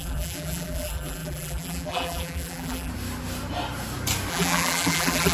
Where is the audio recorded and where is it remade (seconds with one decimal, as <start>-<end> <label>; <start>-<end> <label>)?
0.0-2.9 remade; 2.9-4.3 recorded; 4.3-5.3 remade